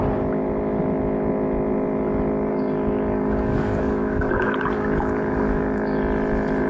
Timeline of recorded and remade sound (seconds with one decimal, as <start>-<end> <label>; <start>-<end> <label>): 0.0-2.5 recorded; 2.5-6.0 remade; 6.0-6.7 recorded